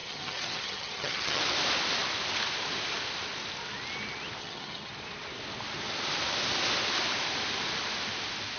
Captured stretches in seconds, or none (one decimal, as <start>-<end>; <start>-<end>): 1.4-4.4; 4.9-8.6